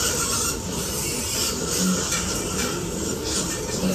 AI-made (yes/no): yes